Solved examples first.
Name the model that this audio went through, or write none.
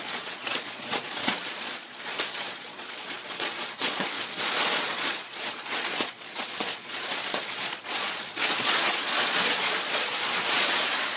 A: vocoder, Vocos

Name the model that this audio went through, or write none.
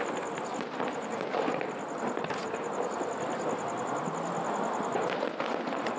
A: none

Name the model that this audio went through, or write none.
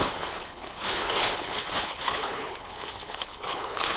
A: codec, HILCodec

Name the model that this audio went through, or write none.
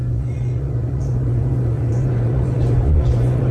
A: vocoder, Vocos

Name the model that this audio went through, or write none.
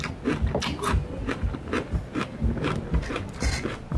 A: none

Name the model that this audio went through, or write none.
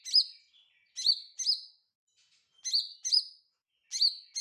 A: none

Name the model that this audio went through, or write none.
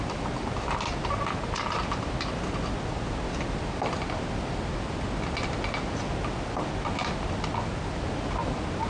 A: none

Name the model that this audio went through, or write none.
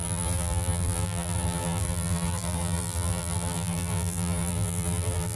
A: vocoder, BigVGAN v2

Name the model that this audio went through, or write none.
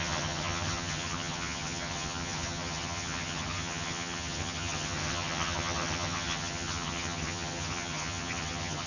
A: vocoder, HiFi-GAN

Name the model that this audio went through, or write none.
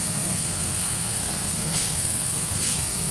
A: codec, SNAC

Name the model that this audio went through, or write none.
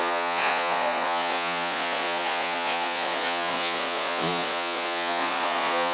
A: vocoder, Vocos